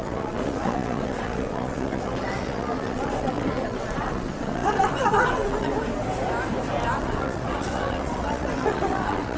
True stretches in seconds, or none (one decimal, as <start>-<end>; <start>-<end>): 5.7-7.0